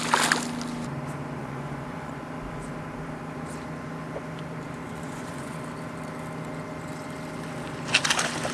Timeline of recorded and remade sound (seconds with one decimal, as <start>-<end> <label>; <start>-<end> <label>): 0.0-1.4 recorded; 1.4-2.2 remade; 2.2-4.8 recorded; 4.8-5.6 remade; 5.6-8.5 recorded